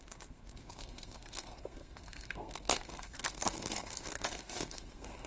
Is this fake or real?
fake